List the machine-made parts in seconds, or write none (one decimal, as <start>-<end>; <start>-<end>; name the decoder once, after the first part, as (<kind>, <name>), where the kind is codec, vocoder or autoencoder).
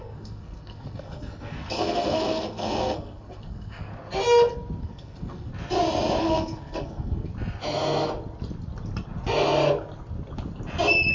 0.0-3.9 (codec, SNAC); 4.8-5.5; 6.2-7.3